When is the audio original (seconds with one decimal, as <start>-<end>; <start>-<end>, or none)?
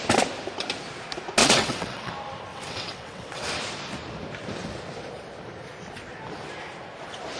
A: 0.0-1.4; 2.1-2.5; 3.5-7.4